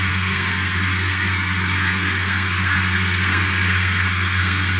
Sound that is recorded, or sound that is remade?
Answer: remade